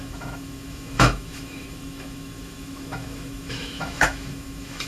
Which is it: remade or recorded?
remade